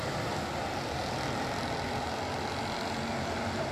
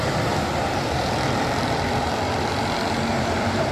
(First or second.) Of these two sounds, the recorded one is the first